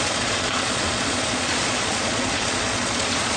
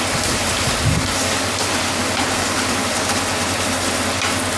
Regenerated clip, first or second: first